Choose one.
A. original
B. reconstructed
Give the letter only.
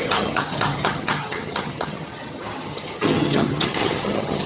B